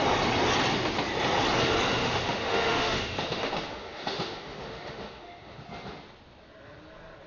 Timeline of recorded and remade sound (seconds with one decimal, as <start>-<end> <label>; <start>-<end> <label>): 0.0-2.0 recorded; 2.0-5.6 remade; 5.6-7.3 recorded